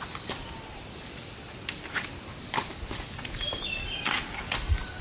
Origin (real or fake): real